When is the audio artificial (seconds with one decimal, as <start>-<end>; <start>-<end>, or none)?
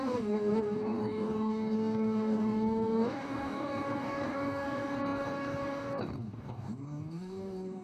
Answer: 0.0-7.8